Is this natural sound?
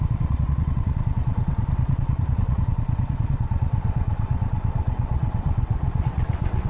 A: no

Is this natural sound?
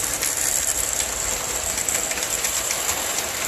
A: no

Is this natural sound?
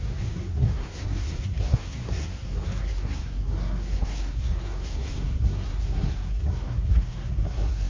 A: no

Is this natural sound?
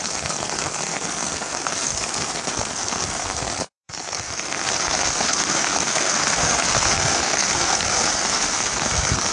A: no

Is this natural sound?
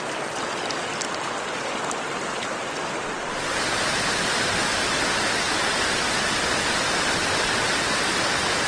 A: yes